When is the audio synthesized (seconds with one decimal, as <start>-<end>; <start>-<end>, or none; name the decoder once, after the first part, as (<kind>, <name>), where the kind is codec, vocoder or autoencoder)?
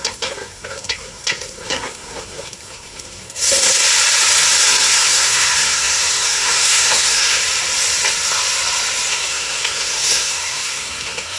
0.0-3.8 (codec, SNAC); 4.6-7.4; 9.1-11.4